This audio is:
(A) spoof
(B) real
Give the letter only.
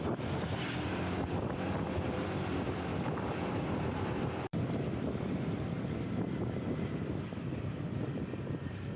A